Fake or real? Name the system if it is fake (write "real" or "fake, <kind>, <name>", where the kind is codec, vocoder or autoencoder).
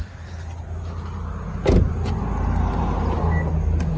real